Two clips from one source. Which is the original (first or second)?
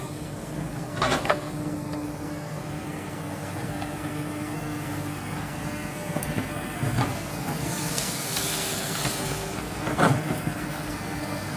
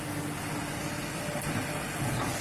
second